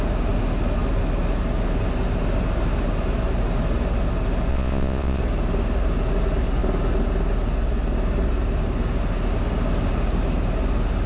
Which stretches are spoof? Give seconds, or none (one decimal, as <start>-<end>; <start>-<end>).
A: 4.5-5.2